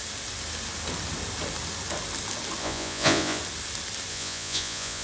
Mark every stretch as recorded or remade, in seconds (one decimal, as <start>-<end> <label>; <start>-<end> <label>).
0.0-2.6 recorded; 2.6-3.4 remade; 3.4-4.1 recorded; 4.1-5.0 remade